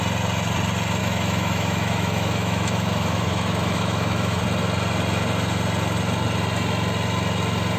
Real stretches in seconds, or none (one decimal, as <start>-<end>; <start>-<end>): 0.0-1.0; 4.4-7.8